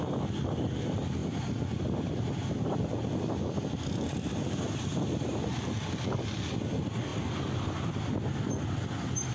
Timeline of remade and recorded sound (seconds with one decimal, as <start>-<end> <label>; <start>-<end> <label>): 0.0-9.3 recorded

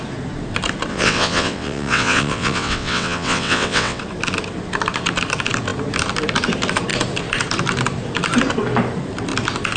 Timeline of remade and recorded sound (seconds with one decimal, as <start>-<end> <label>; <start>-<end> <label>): 0.0-0.9 recorded; 0.9-4.0 remade; 4.0-9.8 recorded

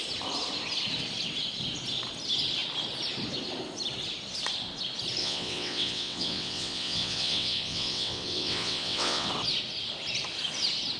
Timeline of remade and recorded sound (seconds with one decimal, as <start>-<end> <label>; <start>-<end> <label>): 0.0-5.2 recorded; 5.2-9.3 remade; 9.3-11.0 recorded

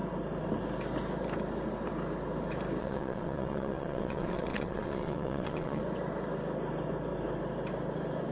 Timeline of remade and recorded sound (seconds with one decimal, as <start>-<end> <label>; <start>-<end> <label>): 0.0-2.8 recorded; 2.8-5.8 remade; 5.8-8.3 recorded

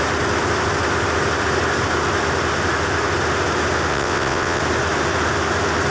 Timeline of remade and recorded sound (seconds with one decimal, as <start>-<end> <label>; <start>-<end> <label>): 0.0-3.9 recorded; 3.9-4.6 remade; 4.6-5.9 recorded

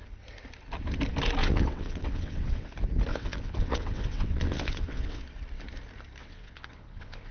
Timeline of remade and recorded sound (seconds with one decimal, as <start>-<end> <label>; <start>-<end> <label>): 0.0-1.4 recorded; 1.4-2.7 remade; 2.7-3.1 recorded; 3.1-5.2 remade; 5.2-6.2 recorded; 6.2-7.3 remade

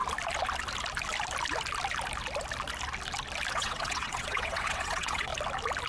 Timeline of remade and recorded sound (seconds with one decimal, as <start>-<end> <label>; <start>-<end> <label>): 0.0-3.5 recorded; 3.5-5.3 remade; 5.3-5.9 recorded